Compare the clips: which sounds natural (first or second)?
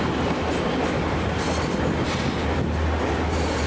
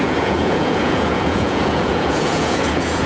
first